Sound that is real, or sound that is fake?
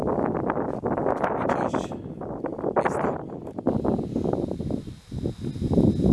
real